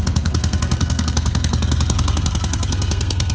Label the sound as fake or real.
fake